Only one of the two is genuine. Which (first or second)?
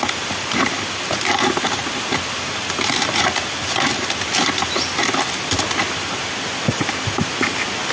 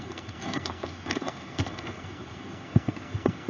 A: first